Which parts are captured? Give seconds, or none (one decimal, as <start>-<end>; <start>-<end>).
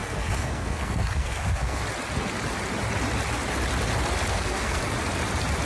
1.8-4.3; 4.8-5.7